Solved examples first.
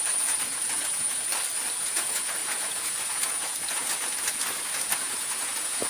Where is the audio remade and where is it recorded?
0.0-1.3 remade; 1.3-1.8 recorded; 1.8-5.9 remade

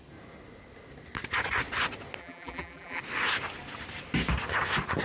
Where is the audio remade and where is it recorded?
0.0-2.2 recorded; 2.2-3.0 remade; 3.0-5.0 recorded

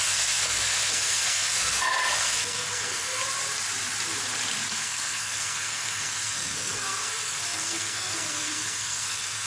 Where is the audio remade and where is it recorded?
0.0-3.2 remade; 3.2-4.7 recorded; 4.7-9.5 remade

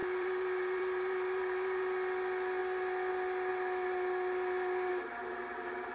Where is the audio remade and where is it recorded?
0.0-1.8 remade; 1.8-5.9 recorded

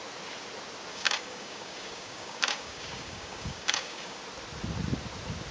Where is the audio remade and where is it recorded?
0.0-0.9 recorded; 0.9-4.2 remade; 4.2-5.5 recorded

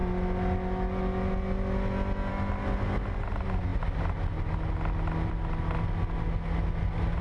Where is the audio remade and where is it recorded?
0.0-7.2 recorded

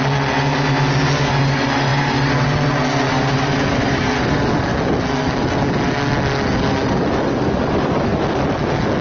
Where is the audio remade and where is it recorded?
0.0-3.1 recorded; 3.1-4.9 remade; 4.9-9.0 recorded

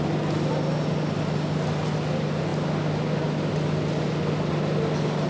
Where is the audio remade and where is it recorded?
0.0-5.3 recorded